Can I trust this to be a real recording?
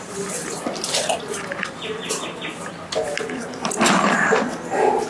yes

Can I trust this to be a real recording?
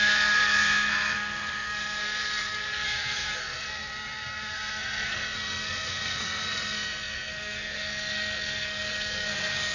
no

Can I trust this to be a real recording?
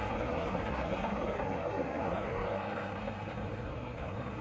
no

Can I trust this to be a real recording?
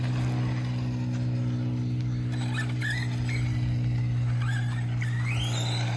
yes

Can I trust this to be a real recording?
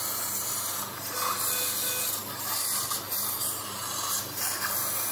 yes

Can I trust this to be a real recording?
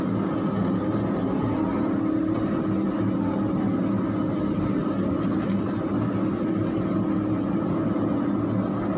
yes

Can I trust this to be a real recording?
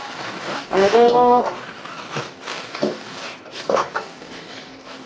no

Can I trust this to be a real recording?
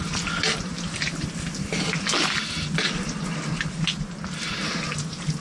yes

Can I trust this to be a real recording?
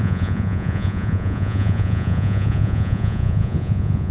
no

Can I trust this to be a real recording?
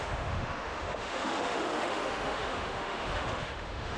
no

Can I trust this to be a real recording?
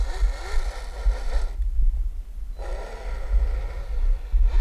yes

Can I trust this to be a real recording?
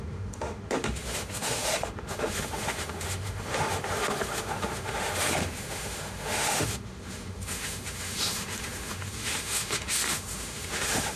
no